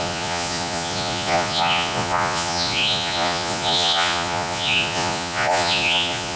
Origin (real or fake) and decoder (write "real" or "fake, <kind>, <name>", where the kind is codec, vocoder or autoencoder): fake, vocoder, Vocos